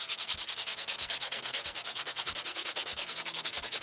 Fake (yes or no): yes